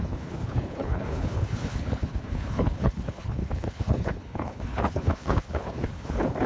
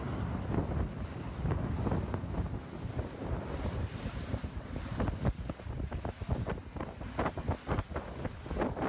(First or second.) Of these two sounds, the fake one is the first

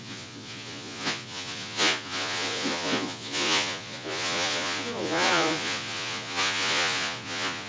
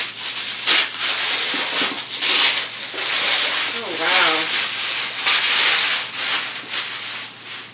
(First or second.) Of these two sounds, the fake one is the first